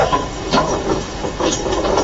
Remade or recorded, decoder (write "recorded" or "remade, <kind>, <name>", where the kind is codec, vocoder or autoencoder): remade, autoencoder, DAC-VAE